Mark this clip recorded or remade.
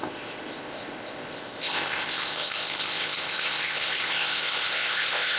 remade